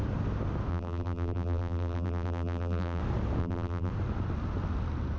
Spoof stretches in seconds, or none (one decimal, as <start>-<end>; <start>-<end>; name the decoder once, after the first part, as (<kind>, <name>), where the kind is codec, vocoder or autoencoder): 0.7-3.0 (vocoder, BigVGAN v2); 3.4-3.9